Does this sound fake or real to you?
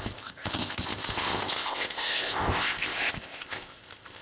fake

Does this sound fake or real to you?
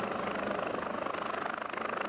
real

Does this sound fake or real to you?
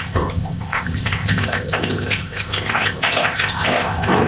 fake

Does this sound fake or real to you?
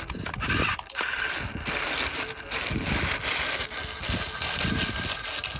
real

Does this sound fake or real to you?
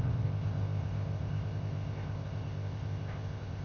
fake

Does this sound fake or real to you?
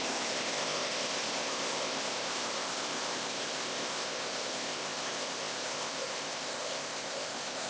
fake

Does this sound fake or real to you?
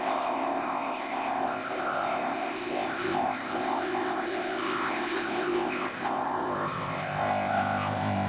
fake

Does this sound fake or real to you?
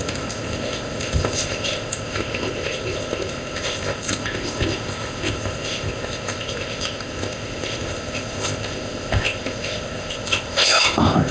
fake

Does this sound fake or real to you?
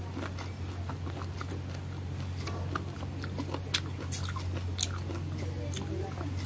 real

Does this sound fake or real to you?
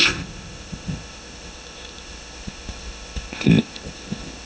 fake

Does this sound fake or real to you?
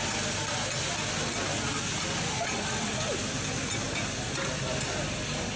real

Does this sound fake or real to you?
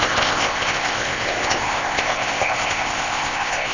fake